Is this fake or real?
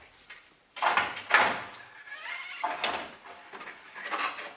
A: real